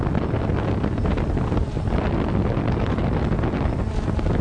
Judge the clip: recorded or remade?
recorded